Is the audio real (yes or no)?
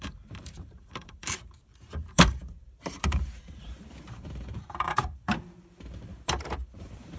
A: no